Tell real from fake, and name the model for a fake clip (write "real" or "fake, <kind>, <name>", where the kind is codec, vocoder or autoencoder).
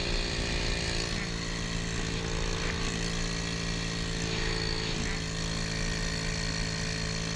real